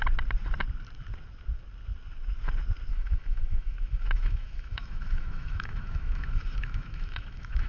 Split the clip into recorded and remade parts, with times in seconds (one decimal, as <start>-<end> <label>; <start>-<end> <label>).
0.0-2.9 recorded; 2.9-7.7 remade